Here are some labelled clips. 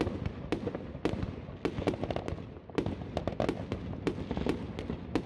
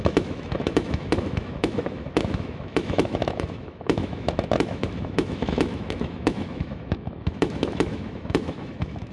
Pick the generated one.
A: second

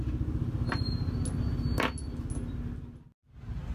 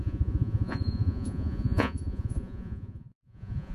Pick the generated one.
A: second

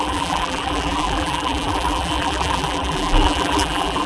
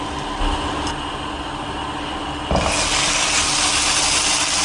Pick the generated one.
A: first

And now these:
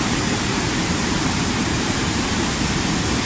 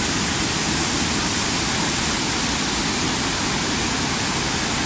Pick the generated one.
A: first